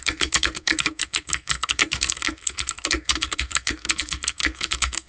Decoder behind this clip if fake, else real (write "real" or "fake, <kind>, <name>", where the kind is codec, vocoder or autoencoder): fake, codec, SNAC